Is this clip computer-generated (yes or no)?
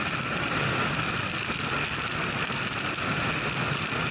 no